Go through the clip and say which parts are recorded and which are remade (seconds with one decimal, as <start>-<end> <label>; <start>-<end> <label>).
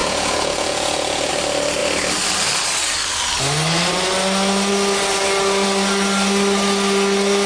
0.0-1.3 remade; 1.3-7.5 recorded